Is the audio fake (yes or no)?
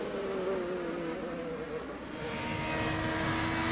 no